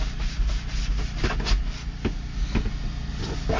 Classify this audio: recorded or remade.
recorded